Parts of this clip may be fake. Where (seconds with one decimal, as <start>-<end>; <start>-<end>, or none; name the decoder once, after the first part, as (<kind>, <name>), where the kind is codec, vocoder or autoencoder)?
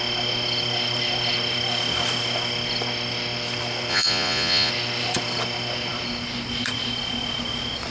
3.9-4.7 (vocoder, Vocos)